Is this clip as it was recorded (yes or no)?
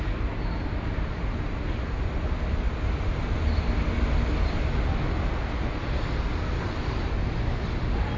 yes